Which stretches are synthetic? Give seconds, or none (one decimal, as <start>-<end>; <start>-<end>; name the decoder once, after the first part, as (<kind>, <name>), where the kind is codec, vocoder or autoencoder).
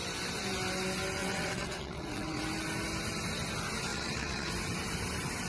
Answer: 1.2-2.4 (vocoder, WaveNeXt); 3.9-4.5